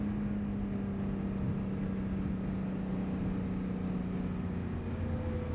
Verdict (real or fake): real